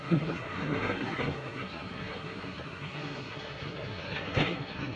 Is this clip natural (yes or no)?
no